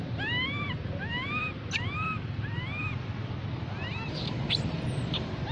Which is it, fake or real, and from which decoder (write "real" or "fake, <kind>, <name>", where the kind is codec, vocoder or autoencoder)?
real